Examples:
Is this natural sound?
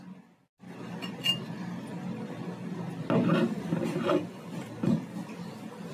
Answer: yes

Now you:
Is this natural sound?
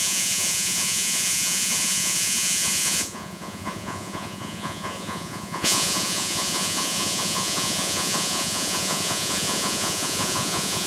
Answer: no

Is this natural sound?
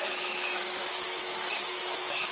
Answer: no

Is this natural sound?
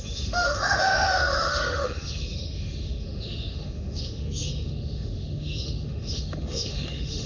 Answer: no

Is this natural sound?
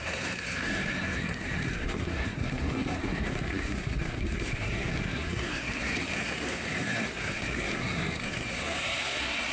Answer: no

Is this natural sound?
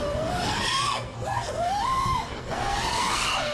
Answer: no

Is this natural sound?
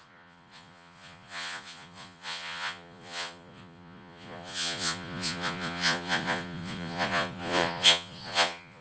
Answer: no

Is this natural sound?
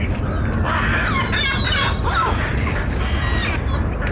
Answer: yes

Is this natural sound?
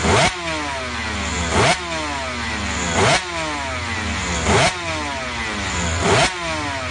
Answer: yes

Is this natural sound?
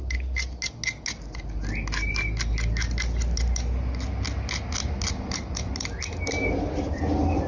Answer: yes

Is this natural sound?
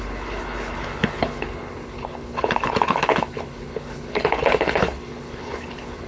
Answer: no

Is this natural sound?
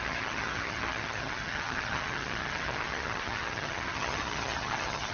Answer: no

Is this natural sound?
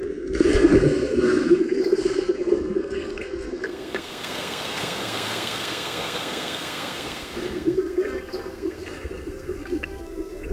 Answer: no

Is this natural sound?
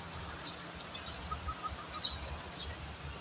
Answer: yes